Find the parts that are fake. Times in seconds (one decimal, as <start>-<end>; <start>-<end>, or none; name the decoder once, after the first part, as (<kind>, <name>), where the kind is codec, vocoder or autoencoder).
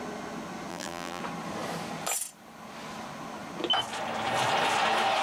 0.7-1.2 (vocoder, BigVGAN v2)